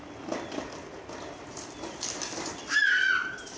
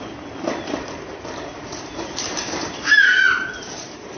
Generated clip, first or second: second